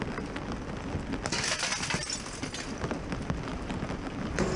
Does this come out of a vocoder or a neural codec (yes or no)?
no